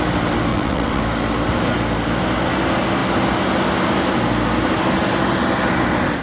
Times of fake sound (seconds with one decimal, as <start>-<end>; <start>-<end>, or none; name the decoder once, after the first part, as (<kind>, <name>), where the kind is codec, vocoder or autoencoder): 0.5-1.0 (vocoder, WaveNeXt)